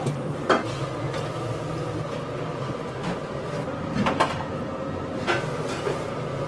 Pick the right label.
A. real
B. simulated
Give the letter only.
A